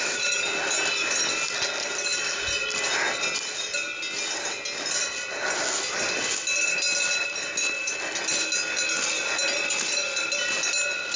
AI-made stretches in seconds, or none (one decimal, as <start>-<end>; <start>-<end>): none